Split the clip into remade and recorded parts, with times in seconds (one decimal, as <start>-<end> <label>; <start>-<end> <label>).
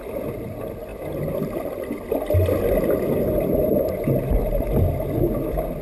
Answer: 0.0-5.8 recorded